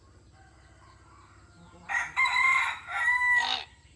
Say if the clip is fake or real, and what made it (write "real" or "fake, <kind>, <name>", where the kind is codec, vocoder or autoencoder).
real